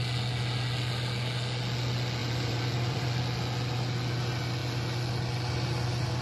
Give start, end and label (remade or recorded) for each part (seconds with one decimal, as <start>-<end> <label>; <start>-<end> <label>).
0.0-2.2 recorded; 2.2-3.2 remade; 3.2-6.2 recorded

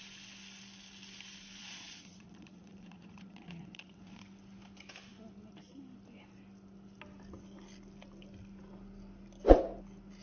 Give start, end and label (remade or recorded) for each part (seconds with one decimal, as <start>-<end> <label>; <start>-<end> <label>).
0.0-1.6 recorded; 1.6-4.2 remade; 4.2-10.2 recorded